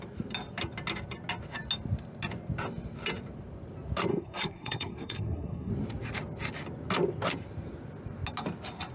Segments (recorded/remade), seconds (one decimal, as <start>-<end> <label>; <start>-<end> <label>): 0.0-4.1 recorded; 4.1-5.7 remade; 5.7-8.9 recorded